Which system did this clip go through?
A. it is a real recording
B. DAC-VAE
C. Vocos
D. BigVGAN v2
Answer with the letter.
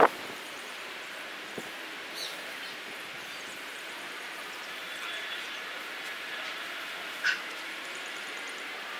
D